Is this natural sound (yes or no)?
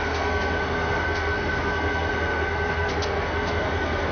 no